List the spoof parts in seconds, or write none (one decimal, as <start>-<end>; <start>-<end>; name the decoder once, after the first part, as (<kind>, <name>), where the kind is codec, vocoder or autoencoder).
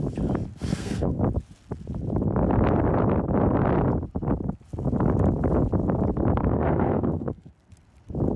0.7-1.2 (codec, SNAC); 6.4-7.5